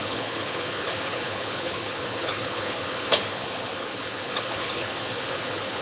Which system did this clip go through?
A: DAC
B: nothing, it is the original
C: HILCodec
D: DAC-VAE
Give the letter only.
C